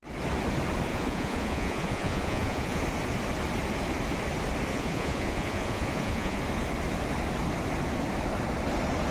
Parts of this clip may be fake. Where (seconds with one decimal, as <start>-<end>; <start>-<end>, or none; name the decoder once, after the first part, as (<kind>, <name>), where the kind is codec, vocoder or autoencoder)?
0.9-2.8 (vocoder, Vocos); 4.7-6.4